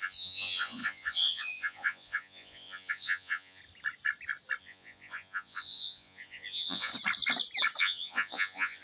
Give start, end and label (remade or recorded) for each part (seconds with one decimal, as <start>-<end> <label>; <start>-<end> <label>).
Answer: 0.0-3.6 remade; 3.6-4.6 recorded; 4.6-6.9 remade; 6.9-7.8 recorded; 7.8-8.8 remade